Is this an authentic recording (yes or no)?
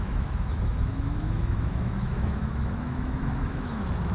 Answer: no